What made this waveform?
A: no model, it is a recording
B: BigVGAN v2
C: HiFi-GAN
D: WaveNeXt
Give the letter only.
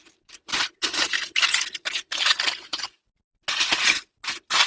A